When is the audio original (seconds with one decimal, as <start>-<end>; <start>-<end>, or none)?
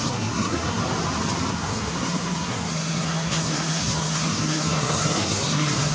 0.8-1.5